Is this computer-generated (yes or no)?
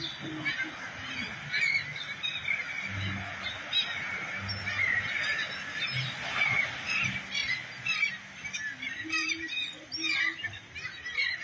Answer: no